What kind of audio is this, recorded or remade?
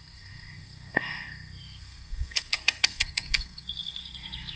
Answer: remade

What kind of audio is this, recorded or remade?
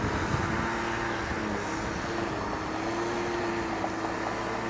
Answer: recorded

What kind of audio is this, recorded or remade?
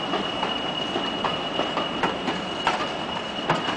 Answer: recorded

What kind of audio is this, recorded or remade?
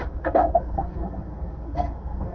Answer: remade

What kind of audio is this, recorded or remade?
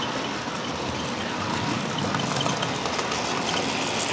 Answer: recorded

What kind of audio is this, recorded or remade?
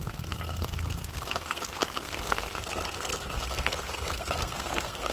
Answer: remade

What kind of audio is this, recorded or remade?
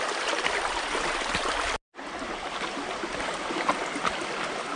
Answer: recorded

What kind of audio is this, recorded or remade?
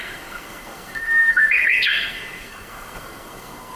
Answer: remade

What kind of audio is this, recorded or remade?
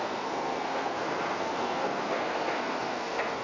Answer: remade